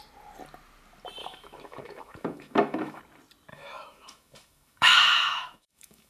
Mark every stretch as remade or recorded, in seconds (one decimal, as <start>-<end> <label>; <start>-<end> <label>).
0.0-1.2 recorded; 1.2-3.0 remade; 3.0-3.5 recorded; 3.5-6.1 remade